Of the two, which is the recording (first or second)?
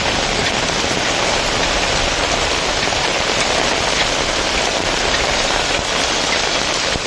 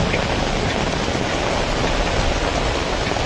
second